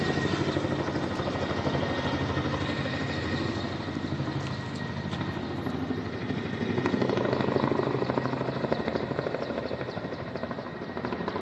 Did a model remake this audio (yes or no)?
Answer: no